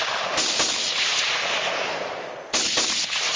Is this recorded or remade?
recorded